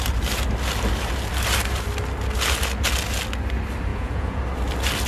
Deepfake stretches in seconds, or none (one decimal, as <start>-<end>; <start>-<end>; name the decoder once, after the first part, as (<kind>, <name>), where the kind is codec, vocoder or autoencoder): 3.9-4.4 (vocoder, Vocos)